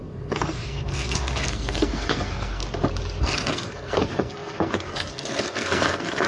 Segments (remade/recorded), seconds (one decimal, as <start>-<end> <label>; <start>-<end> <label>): 0.0-2.6 remade; 2.6-3.2 recorded; 3.2-6.3 remade